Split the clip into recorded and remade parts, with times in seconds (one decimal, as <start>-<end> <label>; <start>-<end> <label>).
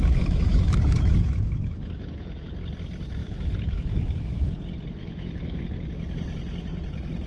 0.0-2.5 remade; 2.5-3.2 recorded; 3.2-4.5 remade; 4.5-5.0 recorded; 5.0-5.6 remade; 5.6-7.3 recorded